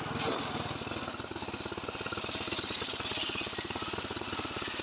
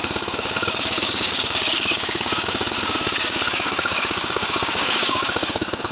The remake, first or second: second